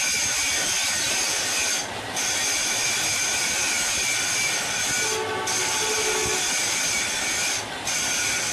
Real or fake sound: real